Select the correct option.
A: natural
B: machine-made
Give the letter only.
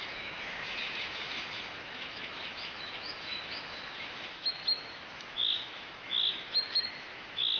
B